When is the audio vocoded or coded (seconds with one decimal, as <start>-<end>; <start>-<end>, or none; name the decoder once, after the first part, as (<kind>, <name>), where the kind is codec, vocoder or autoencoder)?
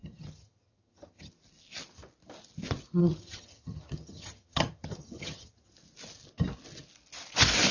0.0-1.3 (vocoder, HiFi-GAN); 3.0-5.7